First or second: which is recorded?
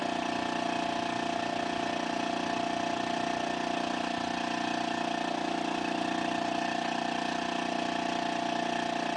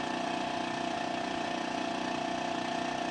first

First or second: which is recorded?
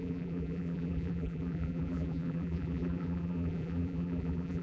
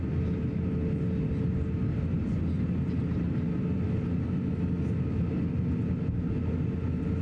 second